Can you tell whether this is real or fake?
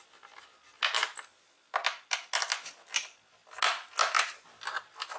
real